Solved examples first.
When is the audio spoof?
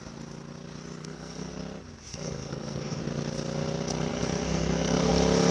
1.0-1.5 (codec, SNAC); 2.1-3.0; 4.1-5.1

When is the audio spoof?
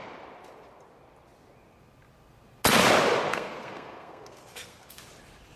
3.3-5.0 (codec, SNAC)